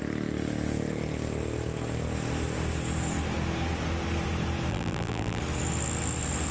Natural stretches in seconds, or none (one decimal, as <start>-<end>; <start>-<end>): 0.0-4.7; 5.4-6.5